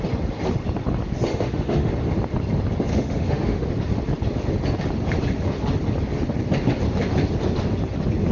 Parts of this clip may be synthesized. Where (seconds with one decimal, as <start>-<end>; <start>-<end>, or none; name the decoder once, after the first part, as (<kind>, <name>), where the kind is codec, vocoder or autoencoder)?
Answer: 1.3-1.9 (autoencoder, DAC-VAE); 2.9-3.7